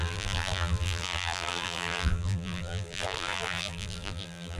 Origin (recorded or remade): remade